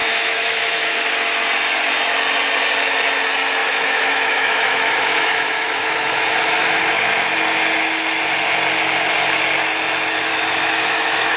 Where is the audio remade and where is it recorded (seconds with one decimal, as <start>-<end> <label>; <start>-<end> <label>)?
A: 0.0-1.1 remade; 1.1-3.6 recorded; 3.6-7.1 remade; 7.1-10.3 recorded; 10.3-11.4 remade